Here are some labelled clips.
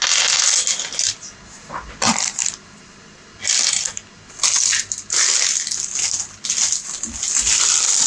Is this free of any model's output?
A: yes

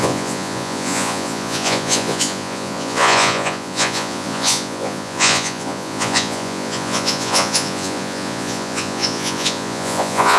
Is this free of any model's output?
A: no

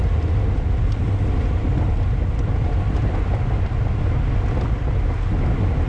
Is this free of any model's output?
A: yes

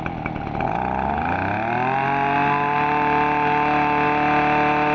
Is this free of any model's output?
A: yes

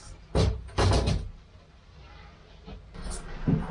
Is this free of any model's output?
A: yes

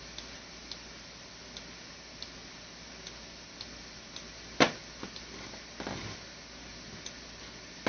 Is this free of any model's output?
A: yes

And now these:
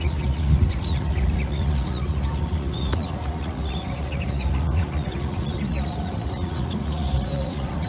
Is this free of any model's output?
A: no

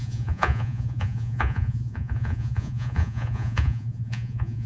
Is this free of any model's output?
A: no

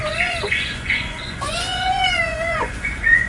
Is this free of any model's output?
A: no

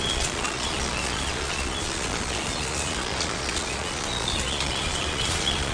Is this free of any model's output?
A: no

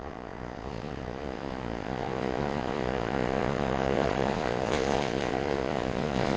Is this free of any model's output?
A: no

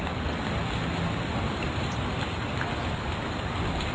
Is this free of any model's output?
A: yes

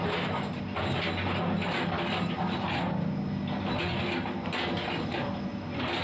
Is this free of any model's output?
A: yes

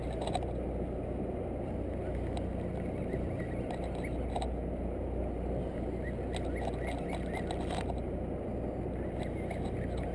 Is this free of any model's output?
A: yes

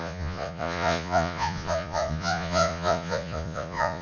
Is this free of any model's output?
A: no